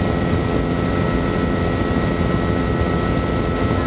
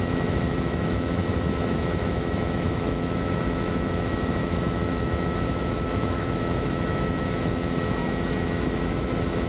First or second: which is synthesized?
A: second